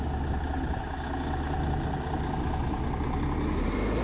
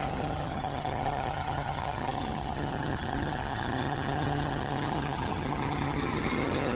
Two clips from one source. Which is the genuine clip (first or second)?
first